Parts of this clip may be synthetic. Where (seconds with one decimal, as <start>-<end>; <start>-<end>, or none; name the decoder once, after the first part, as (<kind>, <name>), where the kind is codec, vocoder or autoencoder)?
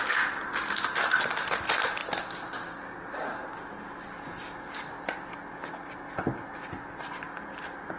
none